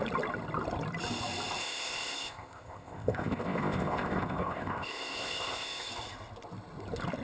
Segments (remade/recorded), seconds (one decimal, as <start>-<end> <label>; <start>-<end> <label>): 0.0-1.6 recorded; 1.6-5.9 remade; 5.9-7.2 recorded